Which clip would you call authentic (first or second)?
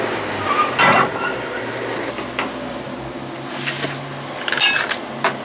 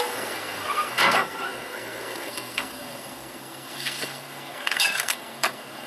first